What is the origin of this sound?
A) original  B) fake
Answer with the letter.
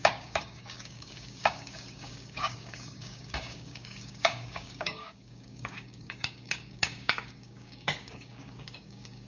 B